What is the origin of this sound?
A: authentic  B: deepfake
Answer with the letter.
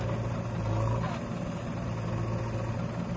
A